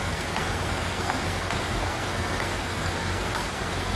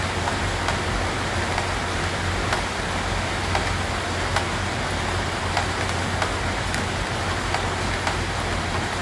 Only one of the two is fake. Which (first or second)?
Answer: first